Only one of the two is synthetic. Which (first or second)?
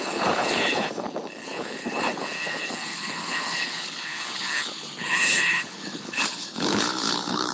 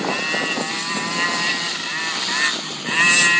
first